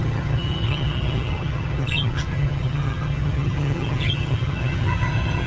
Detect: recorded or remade remade